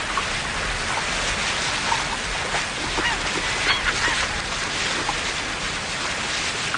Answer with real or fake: real